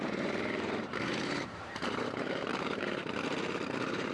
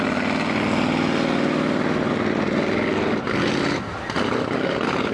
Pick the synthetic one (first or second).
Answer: first